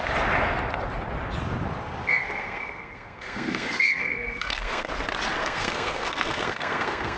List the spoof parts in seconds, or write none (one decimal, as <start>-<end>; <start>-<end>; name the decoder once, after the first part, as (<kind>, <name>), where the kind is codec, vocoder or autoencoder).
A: 2.0-4.9 (codec, SNAC); 5.4-7.2